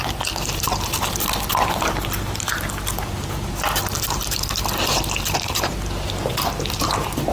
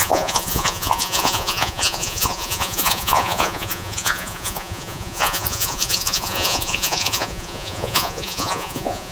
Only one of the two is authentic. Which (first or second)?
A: first